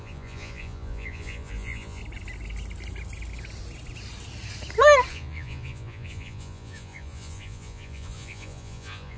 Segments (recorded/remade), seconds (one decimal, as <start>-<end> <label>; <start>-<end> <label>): 0.0-2.0 remade; 2.0-5.1 recorded; 5.1-9.2 remade